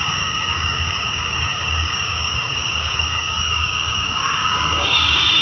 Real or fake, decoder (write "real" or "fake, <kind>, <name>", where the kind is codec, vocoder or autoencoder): fake, codec, DAC